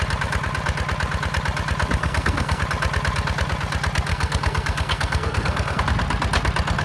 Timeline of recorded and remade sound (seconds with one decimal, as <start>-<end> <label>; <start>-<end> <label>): 0.0-2.0 recorded; 2.0-2.6 remade; 2.6-4.1 recorded; 4.1-5.8 remade; 5.8-6.8 recorded